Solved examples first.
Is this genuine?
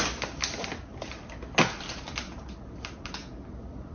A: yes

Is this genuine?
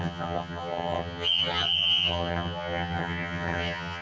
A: no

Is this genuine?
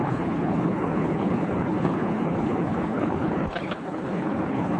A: no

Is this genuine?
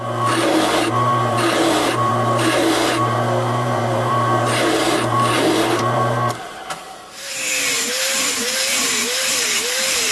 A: no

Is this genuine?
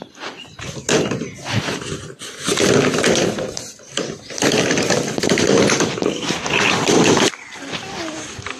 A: yes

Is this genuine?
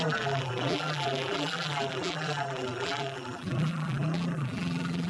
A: no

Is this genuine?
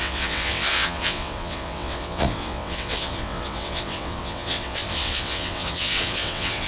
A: no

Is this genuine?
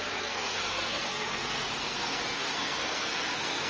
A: no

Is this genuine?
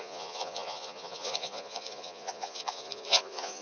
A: no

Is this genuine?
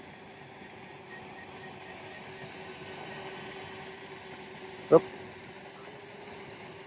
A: yes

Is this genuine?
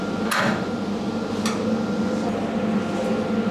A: yes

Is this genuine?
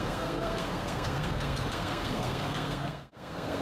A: no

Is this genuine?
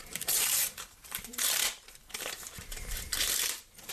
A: no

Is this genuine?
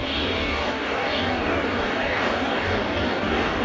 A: no